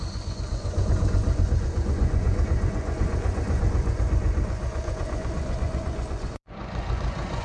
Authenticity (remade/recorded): remade